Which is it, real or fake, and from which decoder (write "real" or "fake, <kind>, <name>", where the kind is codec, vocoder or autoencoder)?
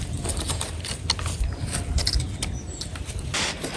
real